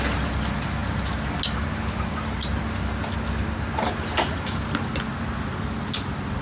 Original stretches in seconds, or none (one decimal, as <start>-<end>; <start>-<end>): 0.0-6.4